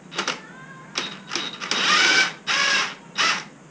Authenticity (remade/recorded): recorded